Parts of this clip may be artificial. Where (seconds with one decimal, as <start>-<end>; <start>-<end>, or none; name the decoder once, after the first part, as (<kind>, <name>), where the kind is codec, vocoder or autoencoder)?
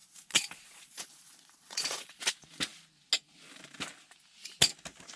0.0-2.2 (vocoder, Vocos)